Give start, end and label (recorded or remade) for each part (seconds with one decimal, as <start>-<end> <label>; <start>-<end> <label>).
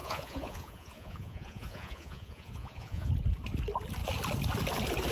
0.0-3.1 remade; 3.1-5.1 recorded